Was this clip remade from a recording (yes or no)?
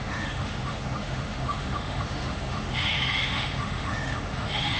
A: yes